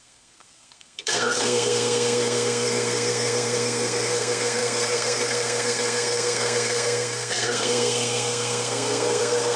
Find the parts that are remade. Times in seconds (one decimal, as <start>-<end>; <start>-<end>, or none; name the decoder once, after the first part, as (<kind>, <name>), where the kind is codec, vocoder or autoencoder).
0.0-9.6 (codec, SNAC)